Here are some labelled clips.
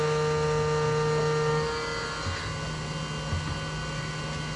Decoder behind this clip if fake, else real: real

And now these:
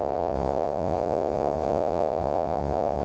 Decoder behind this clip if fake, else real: fake, vocoder, Vocos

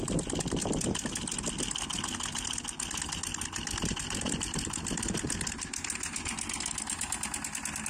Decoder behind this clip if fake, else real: real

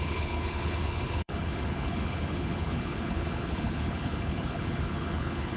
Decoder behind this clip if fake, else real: fake, codec, HILCodec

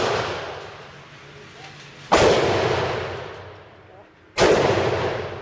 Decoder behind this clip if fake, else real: real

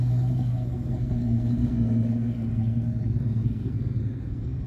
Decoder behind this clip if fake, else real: fake, codec, SNAC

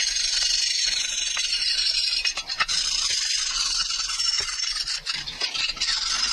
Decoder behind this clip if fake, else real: real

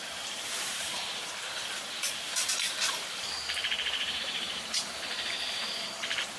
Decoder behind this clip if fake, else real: fake, vocoder, BigVGAN v2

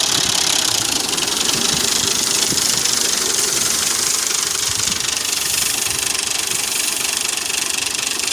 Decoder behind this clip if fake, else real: real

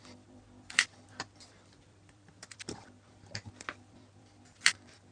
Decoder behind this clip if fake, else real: fake, vocoder, BigVGAN v2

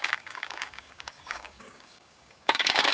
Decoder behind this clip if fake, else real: fake, codec, DAC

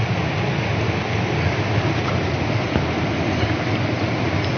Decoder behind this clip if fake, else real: real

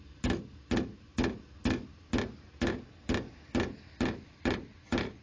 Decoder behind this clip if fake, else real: real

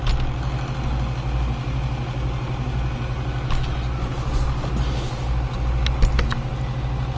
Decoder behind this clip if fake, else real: real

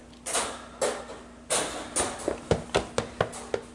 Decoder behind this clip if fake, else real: real